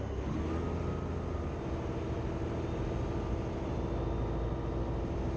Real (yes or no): yes